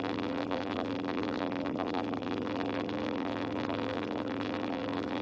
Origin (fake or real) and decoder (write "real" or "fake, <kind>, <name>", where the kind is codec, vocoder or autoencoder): fake, vocoder, BigVGAN v2